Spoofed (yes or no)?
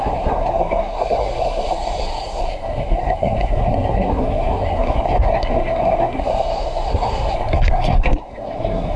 yes